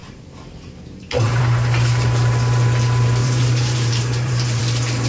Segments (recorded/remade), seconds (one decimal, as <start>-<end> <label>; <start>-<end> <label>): 0.0-1.4 remade; 1.4-3.2 recorded; 3.2-4.6 remade; 4.6-5.1 recorded